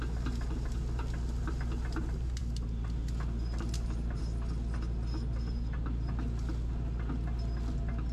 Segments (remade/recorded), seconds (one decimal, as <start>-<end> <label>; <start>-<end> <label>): 0.0-8.1 recorded